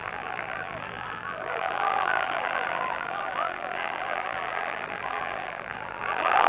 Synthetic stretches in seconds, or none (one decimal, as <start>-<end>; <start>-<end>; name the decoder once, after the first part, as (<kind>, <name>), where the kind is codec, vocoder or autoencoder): 0.0-6.5 (vocoder, BigVGAN v2)